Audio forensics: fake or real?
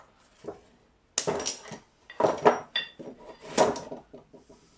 real